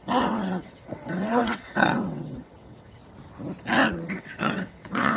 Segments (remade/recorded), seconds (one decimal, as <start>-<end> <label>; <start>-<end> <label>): 0.0-3.0 remade; 3.0-4.1 recorded; 4.1-5.2 remade